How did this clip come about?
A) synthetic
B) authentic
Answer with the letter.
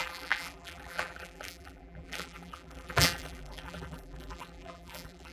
A